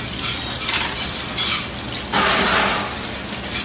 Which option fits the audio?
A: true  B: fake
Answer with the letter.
A